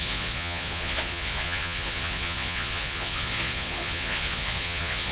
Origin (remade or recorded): remade